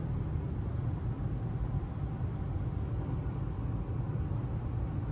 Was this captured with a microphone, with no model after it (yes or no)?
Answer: yes